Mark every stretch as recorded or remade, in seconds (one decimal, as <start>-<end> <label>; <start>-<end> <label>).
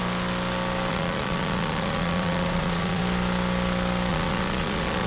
0.0-0.9 recorded; 0.9-3.0 remade; 3.0-4.1 recorded; 4.1-5.1 remade